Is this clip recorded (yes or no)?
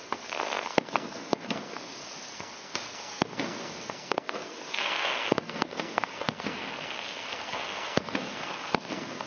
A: no